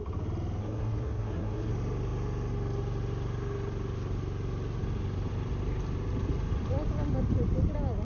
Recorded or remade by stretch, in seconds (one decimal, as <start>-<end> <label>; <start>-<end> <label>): 0.0-0.6 recorded; 0.6-1.7 remade; 1.7-8.0 recorded